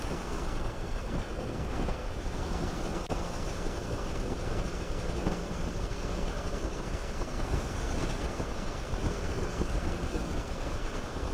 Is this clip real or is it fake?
fake